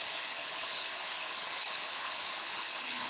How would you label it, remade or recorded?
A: remade